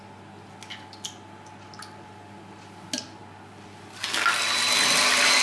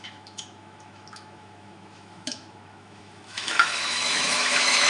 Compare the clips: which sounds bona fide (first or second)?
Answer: first